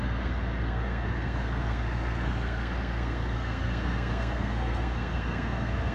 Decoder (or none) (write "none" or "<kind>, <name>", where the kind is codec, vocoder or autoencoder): codec, SNAC